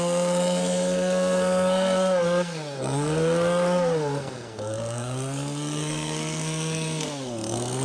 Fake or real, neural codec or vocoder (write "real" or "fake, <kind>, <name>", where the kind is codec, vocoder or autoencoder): fake, codec, SNAC